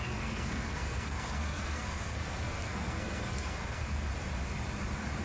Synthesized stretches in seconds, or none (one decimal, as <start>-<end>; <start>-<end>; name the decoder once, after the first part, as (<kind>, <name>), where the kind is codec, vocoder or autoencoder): 0.0-4.1 (codec, SNAC)